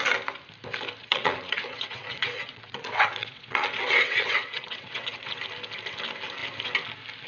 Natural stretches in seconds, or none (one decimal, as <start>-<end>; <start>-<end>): 0.0-1.0; 5.4-7.3